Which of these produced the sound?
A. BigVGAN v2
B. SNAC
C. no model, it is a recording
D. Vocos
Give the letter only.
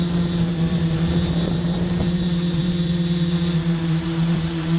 A